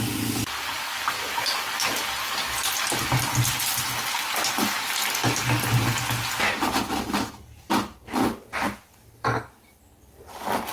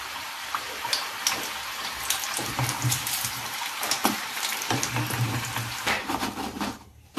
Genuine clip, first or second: first